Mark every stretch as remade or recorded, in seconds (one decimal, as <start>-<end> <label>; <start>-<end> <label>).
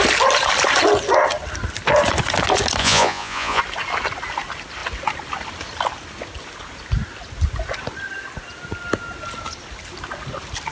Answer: 0.0-2.8 recorded; 2.8-3.6 remade; 3.6-10.7 recorded